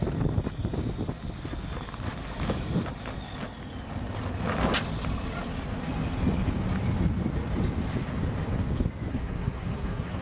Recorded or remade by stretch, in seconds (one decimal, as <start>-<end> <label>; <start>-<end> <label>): 0.0-9.1 recorded; 9.1-10.2 remade